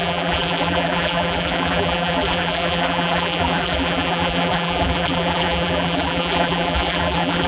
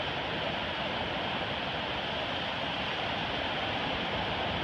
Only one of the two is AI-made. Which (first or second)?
first